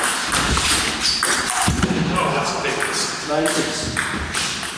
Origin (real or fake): real